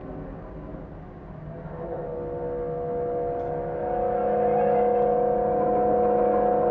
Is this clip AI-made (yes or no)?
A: no